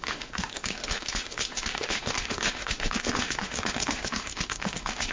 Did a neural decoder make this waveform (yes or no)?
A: yes